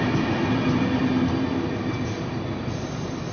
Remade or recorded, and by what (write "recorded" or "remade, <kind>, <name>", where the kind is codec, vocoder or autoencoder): recorded